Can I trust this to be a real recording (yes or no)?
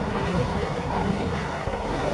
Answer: no